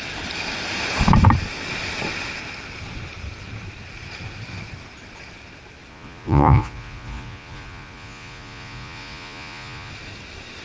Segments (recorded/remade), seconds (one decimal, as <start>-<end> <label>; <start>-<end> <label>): 0.0-5.9 recorded; 5.9-9.9 remade; 9.9-10.6 recorded